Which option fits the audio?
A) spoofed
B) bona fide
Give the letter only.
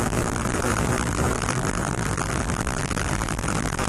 A